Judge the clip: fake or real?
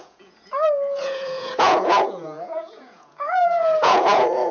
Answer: fake